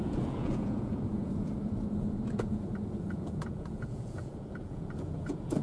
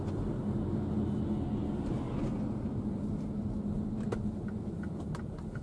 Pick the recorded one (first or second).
second